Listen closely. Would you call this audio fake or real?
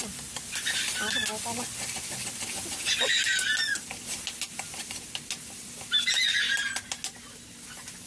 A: real